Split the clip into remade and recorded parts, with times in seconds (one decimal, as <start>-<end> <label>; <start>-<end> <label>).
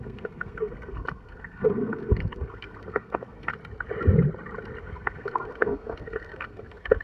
0.0-3.5 remade; 3.5-4.8 recorded; 4.8-7.0 remade